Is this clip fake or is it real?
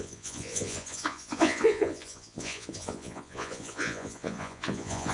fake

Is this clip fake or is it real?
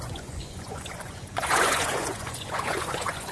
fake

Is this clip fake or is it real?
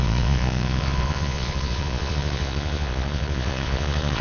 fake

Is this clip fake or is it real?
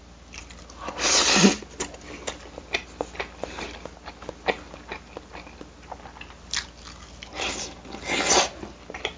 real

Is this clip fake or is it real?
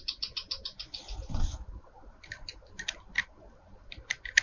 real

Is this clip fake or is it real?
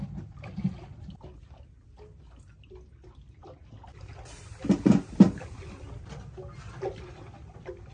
real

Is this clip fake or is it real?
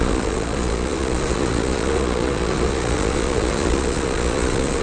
fake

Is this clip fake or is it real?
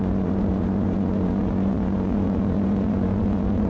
fake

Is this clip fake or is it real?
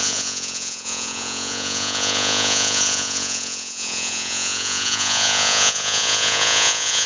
fake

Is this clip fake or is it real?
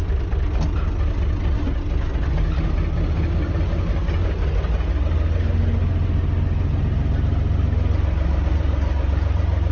real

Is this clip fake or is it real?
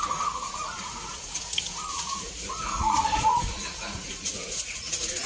fake